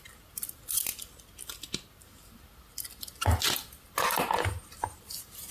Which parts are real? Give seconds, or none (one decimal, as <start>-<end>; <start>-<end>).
0.0-5.5